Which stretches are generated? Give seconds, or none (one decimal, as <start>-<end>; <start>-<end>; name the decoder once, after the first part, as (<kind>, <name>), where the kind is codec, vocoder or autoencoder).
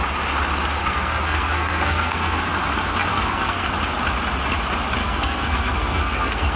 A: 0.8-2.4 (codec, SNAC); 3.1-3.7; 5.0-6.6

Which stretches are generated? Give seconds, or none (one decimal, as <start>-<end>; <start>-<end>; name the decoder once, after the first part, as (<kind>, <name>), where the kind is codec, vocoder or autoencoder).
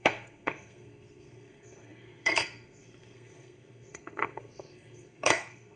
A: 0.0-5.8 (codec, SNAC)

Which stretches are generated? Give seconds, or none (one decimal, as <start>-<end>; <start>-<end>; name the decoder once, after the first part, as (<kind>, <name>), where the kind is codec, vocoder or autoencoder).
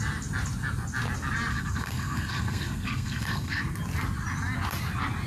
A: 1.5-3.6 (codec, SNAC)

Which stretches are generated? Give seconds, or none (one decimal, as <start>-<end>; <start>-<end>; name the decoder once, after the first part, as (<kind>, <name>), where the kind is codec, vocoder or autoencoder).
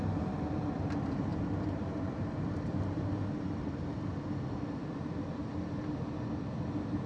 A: none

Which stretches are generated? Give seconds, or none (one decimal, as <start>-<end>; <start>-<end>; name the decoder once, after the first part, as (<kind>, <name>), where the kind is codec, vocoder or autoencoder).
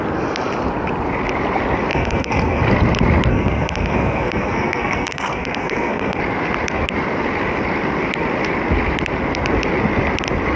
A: 1.9-2.6 (codec, SNAC); 3.3-6.2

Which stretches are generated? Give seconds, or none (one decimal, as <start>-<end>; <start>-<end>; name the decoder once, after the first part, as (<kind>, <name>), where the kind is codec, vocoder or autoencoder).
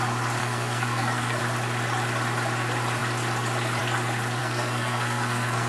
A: 0.4-1.4 (codec, SNAC); 4.4-5.7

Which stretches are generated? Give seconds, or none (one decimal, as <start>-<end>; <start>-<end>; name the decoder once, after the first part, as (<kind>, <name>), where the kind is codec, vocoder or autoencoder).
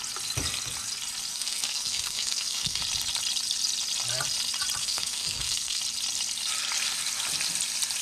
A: 1.3-2.8 (codec, SNAC); 4.8-5.8